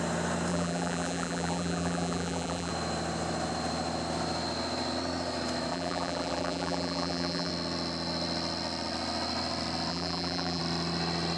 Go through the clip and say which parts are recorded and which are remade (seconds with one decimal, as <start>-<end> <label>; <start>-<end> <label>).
0.0-0.5 recorded; 0.5-2.7 remade; 2.7-5.7 recorded; 5.7-7.5 remade; 7.5-9.9 recorded; 9.9-10.6 remade; 10.6-11.4 recorded